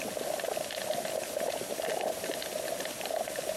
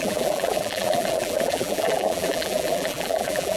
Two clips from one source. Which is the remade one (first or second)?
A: second